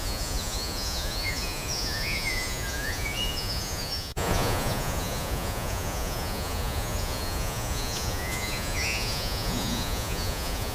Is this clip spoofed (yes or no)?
yes